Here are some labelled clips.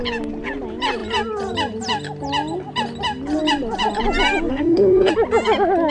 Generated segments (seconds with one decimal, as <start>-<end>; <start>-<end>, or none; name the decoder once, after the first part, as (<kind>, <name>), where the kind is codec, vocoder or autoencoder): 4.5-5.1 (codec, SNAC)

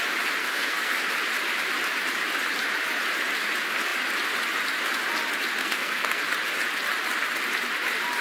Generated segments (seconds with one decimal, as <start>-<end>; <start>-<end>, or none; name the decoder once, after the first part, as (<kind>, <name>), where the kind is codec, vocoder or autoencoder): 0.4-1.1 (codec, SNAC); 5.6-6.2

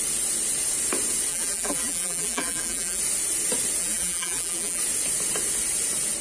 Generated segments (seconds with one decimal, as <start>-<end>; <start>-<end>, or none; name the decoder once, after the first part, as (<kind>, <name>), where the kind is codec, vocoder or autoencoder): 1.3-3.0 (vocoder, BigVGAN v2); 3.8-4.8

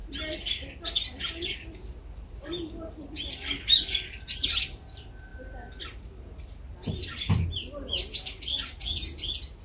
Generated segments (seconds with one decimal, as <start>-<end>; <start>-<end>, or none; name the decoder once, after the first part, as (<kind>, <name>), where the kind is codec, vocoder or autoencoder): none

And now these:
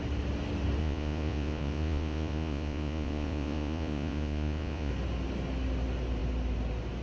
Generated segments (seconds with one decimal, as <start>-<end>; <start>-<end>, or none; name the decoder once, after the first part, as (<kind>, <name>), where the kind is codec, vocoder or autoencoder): 0.8-4.9 (vocoder, Vocos)

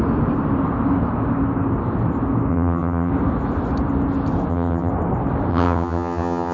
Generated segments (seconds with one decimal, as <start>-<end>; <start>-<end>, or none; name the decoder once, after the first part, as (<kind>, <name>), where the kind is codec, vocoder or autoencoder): 2.5-3.1 (vocoder, HiFi-GAN); 4.5-4.9; 5.5-6.5

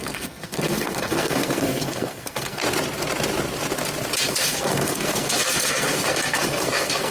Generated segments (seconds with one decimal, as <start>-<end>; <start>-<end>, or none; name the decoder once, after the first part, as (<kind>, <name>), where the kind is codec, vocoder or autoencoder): 0.0-2.6 (codec, SNAC); 4.3-7.1